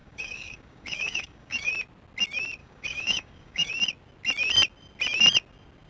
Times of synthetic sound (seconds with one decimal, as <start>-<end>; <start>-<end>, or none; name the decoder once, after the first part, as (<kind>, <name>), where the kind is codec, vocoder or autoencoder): 0.0-1.7 (codec, DAC); 2.6-3.7